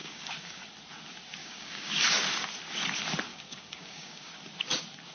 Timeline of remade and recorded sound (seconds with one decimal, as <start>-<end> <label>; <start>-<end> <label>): 0.0-0.6 remade; 0.6-1.4 recorded; 1.4-2.0 remade; 2.0-3.3 recorded; 3.3-4.3 remade; 4.3-5.1 recorded